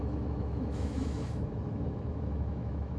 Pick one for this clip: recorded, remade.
remade